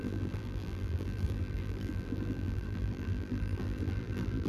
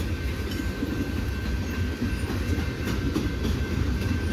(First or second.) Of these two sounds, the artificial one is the first